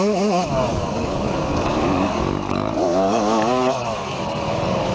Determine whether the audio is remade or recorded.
remade